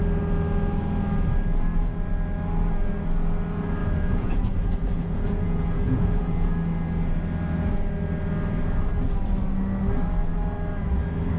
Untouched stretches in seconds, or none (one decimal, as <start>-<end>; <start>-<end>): 0.0-3.8; 6.5-11.4